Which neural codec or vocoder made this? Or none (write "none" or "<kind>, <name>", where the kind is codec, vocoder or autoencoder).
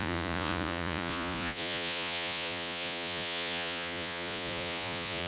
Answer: vocoder, Vocos